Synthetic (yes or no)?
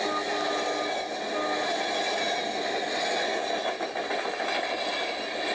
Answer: no